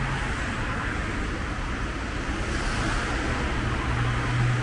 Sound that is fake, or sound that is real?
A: real